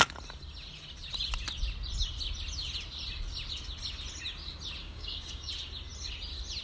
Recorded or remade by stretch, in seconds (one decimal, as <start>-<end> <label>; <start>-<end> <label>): 0.0-4.8 recorded; 4.8-5.5 remade; 5.5-6.6 recorded